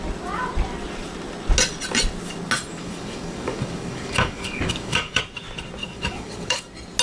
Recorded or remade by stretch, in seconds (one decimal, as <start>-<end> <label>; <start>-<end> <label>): 0.0-2.7 recorded; 2.7-5.2 remade; 5.2-5.8 recorded; 5.8-6.6 remade; 6.6-7.0 recorded